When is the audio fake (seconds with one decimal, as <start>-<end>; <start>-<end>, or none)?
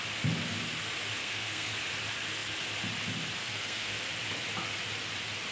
1.2-1.7; 3.4-4.0